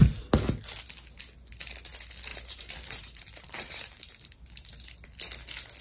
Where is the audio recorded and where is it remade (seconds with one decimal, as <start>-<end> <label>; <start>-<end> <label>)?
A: 0.0-2.3 recorded; 2.3-4.7 remade; 4.7-5.8 recorded